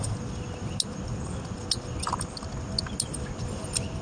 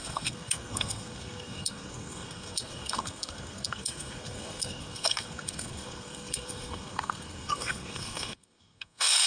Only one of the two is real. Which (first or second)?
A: first